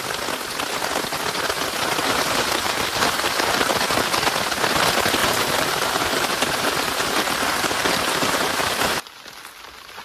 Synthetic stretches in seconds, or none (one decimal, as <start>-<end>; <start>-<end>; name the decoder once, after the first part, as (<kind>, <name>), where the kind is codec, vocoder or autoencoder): 2.0-3.7 (vocoder, BigVGAN v2); 5.2-8.8